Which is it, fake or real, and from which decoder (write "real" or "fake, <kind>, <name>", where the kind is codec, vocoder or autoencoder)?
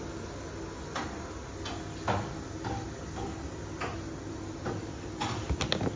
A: real